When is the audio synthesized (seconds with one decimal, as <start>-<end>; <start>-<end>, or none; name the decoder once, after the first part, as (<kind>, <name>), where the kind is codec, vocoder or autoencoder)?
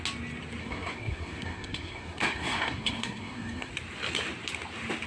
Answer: 0.6-3.7 (codec, SNAC)